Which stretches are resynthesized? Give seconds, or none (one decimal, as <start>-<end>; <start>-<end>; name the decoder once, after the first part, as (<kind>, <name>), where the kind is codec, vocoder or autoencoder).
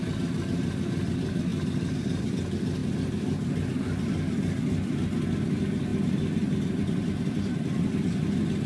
none